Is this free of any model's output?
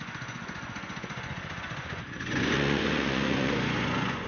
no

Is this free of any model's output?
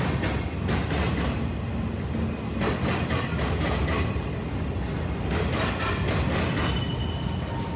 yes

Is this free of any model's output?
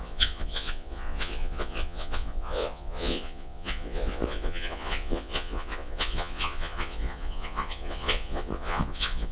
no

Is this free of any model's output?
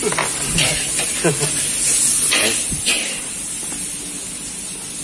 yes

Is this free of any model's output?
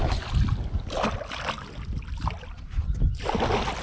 yes